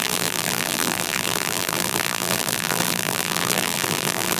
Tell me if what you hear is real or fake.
fake